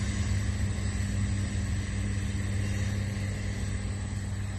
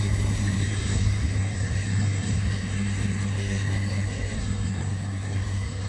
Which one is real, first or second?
first